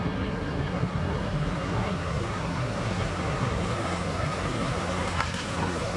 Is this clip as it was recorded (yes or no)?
no